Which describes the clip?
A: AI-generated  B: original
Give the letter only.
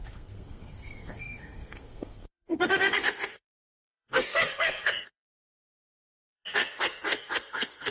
A